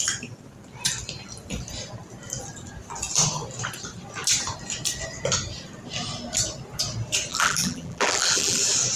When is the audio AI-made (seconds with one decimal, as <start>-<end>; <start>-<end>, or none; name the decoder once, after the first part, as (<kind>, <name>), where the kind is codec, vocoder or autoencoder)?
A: 7.3-8.6 (vocoder, BigVGAN v2)